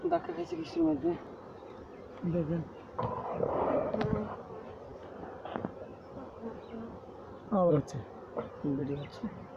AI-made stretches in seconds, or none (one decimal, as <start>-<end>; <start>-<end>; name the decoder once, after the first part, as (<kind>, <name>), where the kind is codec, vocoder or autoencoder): none